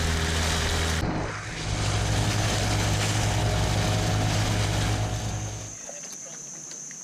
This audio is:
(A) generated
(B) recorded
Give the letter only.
B